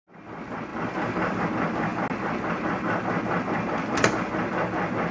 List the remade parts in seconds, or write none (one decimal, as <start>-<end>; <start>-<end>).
none